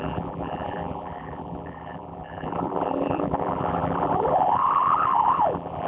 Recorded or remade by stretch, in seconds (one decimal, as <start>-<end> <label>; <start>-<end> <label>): 0.0-5.9 remade